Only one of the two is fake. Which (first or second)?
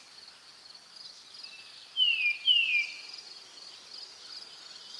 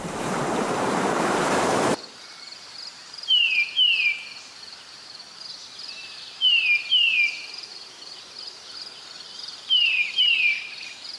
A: second